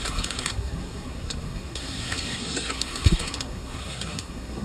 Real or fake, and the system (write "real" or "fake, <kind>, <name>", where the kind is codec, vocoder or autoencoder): fake, codec, SNAC